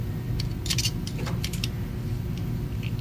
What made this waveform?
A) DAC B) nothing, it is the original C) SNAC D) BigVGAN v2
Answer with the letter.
D